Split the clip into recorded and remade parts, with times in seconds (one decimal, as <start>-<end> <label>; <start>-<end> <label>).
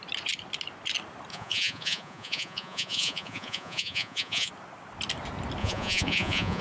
0.0-1.3 recorded; 1.3-4.5 remade; 4.5-5.6 recorded; 5.6-6.6 remade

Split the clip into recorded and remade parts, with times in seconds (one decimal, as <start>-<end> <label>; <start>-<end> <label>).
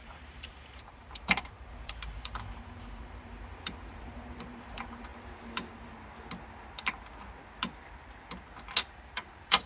0.0-5.1 remade; 5.1-8.9 recorded; 8.9-9.7 remade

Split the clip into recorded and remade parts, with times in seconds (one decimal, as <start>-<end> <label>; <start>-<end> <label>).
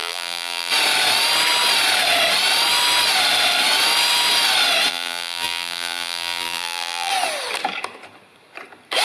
0.0-0.7 remade; 0.7-4.9 recorded; 4.9-7.1 remade; 7.1-9.0 recorded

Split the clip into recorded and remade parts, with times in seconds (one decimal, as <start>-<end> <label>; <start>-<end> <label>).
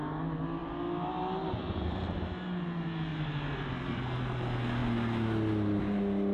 0.0-3.1 recorded; 3.1-4.0 remade; 4.0-6.3 recorded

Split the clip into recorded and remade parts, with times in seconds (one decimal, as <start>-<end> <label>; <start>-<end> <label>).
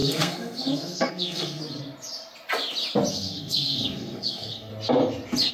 0.0-1.6 remade; 1.6-3.1 recorded; 3.1-4.7 remade; 4.7-5.5 recorded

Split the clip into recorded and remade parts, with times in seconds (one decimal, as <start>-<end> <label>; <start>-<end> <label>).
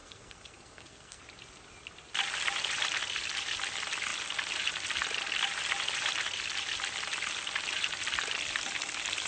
0.0-1.2 remade; 1.2-9.3 recorded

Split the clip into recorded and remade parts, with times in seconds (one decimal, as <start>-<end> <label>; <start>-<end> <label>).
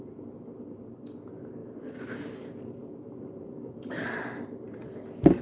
0.0-1.6 recorded; 1.6-4.8 remade; 4.8-5.4 recorded